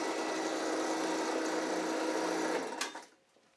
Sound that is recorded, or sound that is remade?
recorded